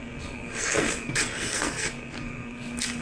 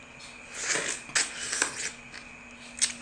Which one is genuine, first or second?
second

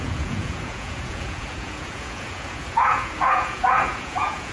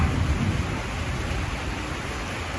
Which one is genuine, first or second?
second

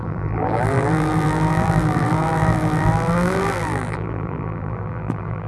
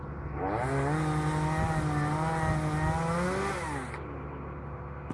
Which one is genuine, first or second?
second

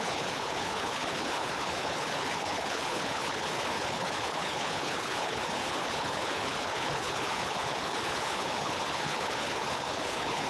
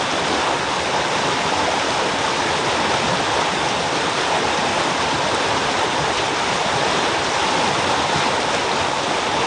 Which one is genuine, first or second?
second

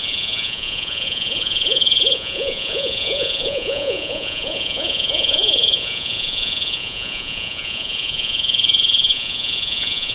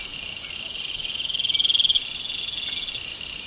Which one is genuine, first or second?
second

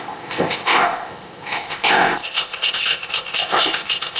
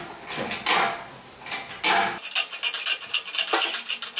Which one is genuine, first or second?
second